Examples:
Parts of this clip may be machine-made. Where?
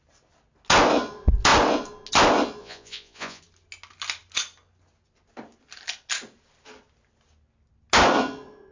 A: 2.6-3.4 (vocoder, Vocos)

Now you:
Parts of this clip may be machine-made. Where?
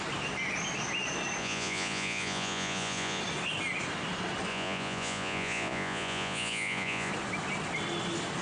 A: 1.4-3.2 (vocoder, Vocos); 4.5-7.1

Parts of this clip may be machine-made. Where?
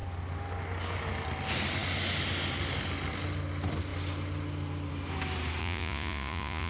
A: 5.6-6.7 (vocoder, Vocos)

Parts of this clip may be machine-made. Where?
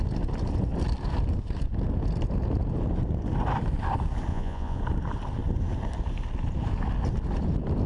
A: 4.3-4.8 (vocoder, Vocos)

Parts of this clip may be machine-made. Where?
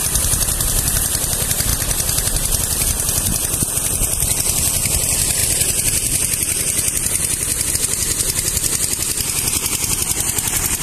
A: none